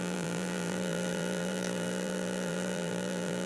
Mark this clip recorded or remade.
remade